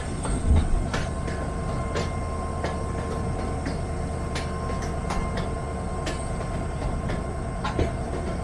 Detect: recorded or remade recorded